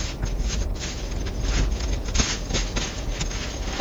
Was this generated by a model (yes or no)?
no